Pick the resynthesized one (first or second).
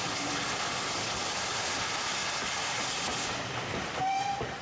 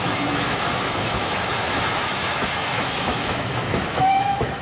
second